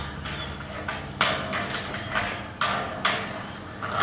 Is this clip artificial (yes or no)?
no